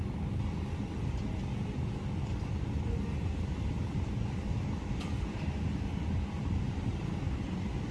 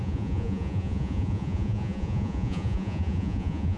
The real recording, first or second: first